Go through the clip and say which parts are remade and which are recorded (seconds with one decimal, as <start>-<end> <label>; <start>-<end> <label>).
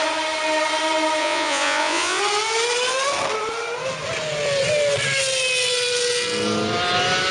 0.0-1.2 recorded; 1.2-2.2 remade; 2.2-7.3 recorded